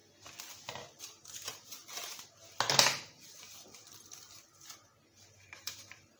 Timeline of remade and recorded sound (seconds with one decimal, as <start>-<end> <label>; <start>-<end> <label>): 0.0-1.0 recorded; 1.0-1.8 remade; 1.8-5.5 recorded; 5.5-6.2 remade